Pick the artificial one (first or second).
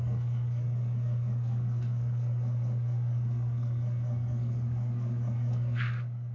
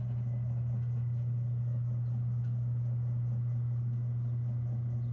first